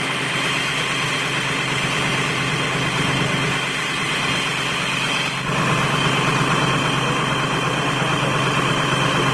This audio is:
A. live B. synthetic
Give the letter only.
A